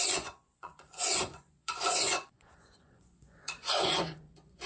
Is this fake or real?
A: fake